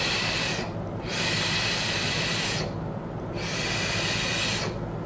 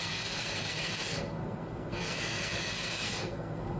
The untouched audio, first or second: first